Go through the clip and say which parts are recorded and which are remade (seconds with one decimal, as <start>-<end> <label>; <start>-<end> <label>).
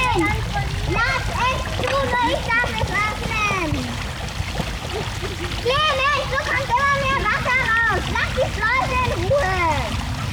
0.0-10.3 recorded